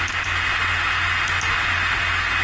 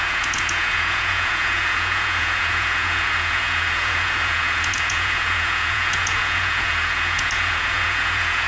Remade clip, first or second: second